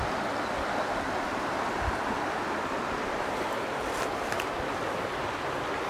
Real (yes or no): yes